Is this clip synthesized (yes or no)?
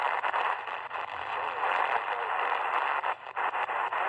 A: yes